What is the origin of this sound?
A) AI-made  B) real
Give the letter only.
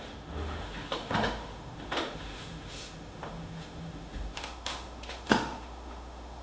A